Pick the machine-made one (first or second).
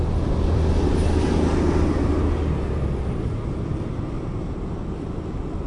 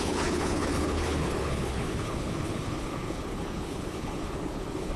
second